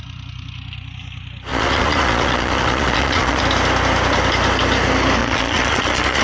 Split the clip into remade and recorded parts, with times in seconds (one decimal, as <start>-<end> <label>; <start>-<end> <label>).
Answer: 0.0-1.5 recorded; 1.5-3.4 remade; 3.4-5.2 recorded; 5.2-6.2 remade